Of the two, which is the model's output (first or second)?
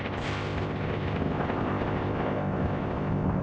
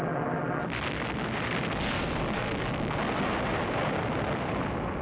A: first